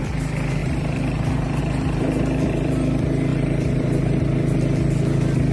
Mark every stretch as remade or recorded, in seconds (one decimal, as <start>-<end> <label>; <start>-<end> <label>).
0.0-0.6 recorded; 0.6-1.6 remade; 1.6-3.3 recorded; 3.3-4.2 remade; 4.2-5.5 recorded